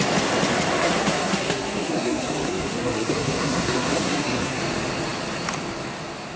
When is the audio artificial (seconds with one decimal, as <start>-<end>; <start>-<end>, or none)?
0.8-4.6